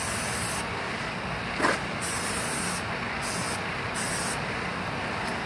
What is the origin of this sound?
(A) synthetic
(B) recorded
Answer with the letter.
B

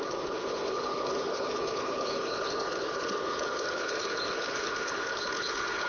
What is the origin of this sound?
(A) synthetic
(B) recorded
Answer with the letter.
A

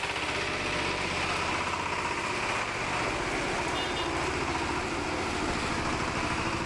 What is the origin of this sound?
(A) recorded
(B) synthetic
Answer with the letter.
A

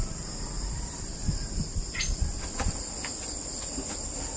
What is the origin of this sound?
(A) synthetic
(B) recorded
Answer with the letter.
B